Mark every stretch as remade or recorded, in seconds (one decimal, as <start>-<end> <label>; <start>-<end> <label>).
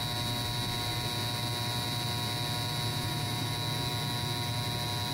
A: 0.0-2.9 recorded; 2.9-3.5 remade; 3.5-5.1 recorded